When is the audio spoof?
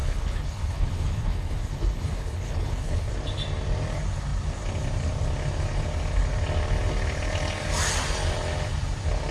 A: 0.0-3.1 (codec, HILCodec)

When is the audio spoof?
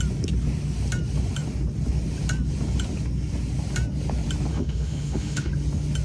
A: 4.5-5.5 (autoencoder, DAC-VAE)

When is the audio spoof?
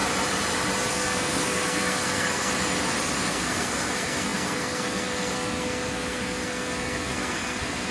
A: 0.9-2.5 (codec, SNAC); 3.3-7.9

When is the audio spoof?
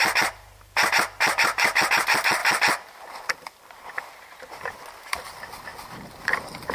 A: 0.0-6.7 (vocoder, BigVGAN v2)